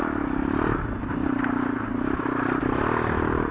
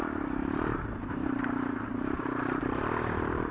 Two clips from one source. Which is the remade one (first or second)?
second